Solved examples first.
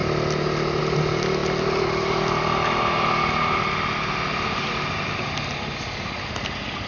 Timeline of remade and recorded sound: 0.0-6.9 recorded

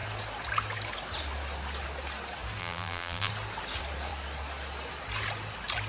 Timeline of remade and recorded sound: 0.0-2.6 recorded; 2.6-3.3 remade; 3.3-5.9 recorded

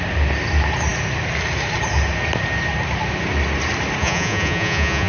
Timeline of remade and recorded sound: 0.0-4.0 recorded; 4.0-5.1 remade

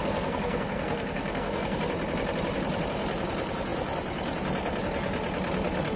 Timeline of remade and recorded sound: 0.0-1.8 remade; 1.8-6.0 recorded

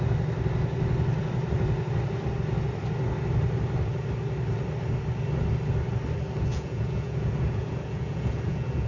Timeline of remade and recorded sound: 0.0-6.5 recorded; 6.5-8.9 remade

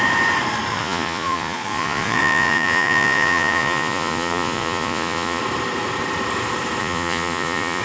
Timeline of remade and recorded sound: 0.0-0.7 recorded; 0.7-5.4 remade; 5.4-6.8 recorded; 6.8-7.8 remade